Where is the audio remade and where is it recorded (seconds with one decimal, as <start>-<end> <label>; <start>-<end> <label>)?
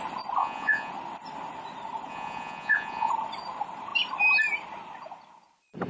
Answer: 0.0-0.4 recorded; 0.4-0.9 remade; 0.9-2.1 recorded; 2.1-3.1 remade; 3.1-5.9 recorded